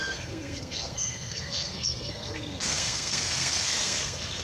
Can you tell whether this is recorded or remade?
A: remade